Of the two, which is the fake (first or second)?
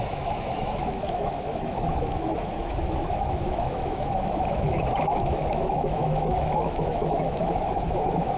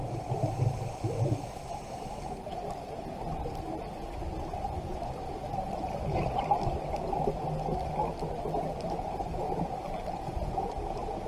first